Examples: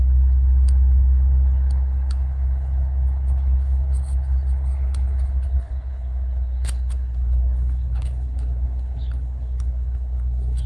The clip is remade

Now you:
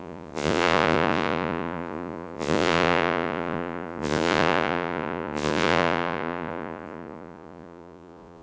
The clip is remade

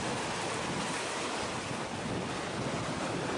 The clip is recorded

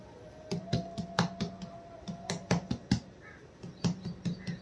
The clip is recorded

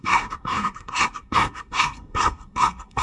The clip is remade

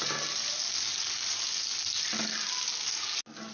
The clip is recorded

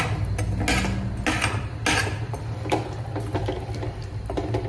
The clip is recorded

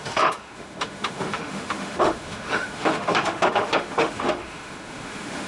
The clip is remade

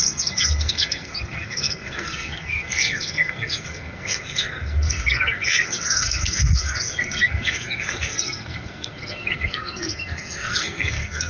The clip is remade